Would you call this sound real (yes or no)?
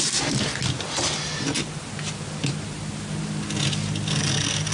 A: yes